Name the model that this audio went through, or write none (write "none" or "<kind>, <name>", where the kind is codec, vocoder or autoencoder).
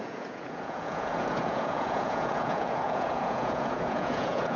vocoder, Vocos